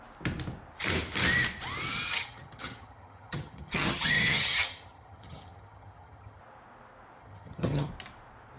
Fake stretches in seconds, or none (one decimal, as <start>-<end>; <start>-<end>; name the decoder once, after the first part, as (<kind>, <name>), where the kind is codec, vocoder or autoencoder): 1.9-6.4 (vocoder, HiFi-GAN); 7.2-7.9